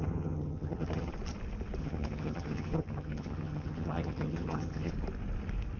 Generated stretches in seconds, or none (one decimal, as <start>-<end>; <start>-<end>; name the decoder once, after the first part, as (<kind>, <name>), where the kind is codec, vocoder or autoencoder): 0.0-1.1 (vocoder, HiFi-GAN); 1.8-4.9